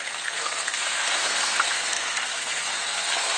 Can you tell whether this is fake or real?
fake